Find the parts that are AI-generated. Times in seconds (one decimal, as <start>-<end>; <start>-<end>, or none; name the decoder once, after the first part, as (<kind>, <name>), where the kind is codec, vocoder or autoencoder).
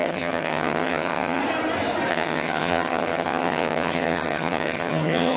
0.0-1.4 (vocoder, HiFi-GAN); 2.1-5.4